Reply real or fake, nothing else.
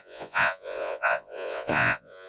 fake